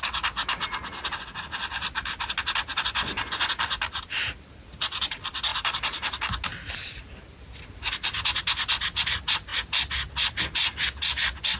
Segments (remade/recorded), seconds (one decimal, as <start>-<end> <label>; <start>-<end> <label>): 0.0-11.6 recorded